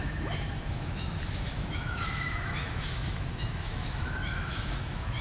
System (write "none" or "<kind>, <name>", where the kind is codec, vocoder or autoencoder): autoencoder, DAC-VAE